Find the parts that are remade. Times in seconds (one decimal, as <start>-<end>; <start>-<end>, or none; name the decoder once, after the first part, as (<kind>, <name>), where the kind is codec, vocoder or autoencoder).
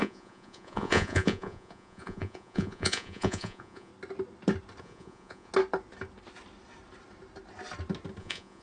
0.0-3.9 (vocoder, Vocos); 4.8-5.5; 8.2-8.6